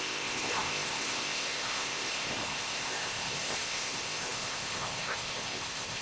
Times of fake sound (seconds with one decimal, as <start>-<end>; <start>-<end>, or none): 0.0-6.0